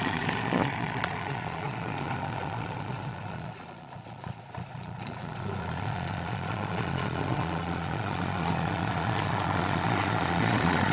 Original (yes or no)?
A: no